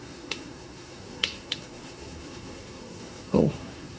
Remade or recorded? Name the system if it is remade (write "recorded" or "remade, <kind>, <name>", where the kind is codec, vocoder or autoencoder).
remade, codec, SNAC